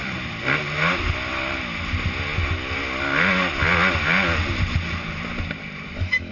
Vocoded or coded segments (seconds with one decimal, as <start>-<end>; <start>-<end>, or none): none